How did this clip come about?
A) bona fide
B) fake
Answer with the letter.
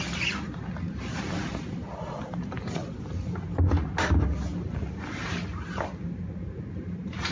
A